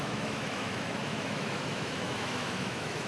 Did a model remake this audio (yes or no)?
yes